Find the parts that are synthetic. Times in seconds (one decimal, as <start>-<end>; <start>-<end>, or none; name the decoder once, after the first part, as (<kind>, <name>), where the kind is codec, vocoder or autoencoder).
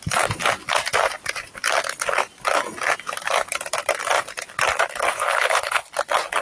5.1-5.9 (codec, HILCodec)